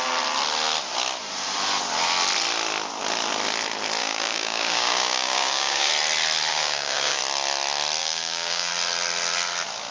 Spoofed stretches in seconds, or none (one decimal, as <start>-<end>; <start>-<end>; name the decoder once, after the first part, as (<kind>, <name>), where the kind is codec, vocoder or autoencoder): 4.0-5.9 (codec, DAC); 6.5-7.2; 8.0-8.7